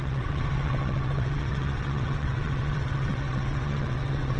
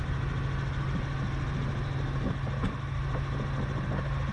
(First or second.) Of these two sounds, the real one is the second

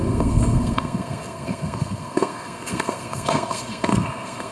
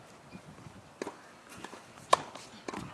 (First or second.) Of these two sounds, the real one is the second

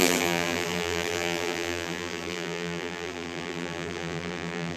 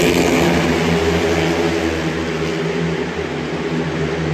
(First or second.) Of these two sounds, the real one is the second